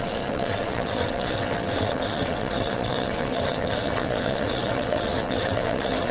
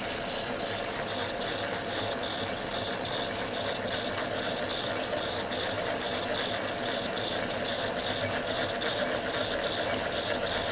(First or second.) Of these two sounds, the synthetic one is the first